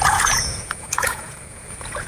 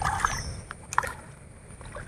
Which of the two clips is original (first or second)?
second